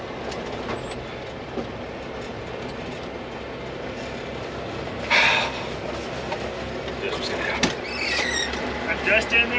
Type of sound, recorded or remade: recorded